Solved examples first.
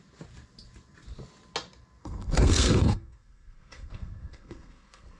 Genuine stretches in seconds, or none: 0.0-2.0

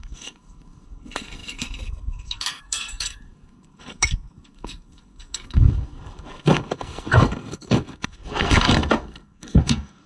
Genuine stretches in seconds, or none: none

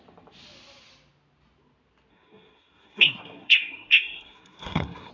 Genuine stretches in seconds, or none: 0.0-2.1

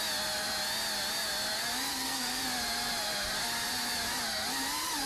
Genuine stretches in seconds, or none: 0.0-1.9; 2.4-5.1

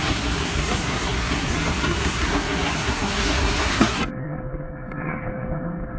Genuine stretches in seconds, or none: none

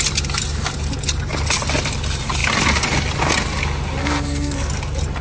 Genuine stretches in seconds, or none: 0.0-4.0; 4.7-5.2

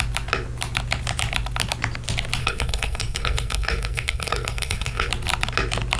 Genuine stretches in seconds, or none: 0.0-2.4; 5.1-6.0

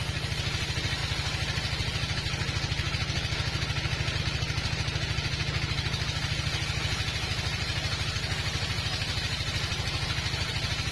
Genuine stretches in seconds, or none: 0.0-10.9